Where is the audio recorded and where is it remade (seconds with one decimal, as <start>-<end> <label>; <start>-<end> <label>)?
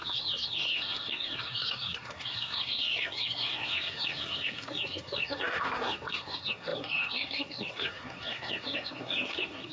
0.0-9.7 remade